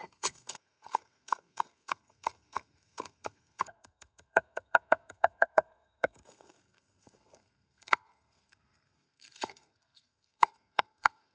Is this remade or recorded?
remade